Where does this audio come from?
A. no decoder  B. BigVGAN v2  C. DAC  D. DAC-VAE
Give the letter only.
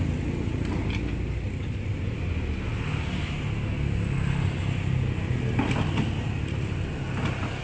A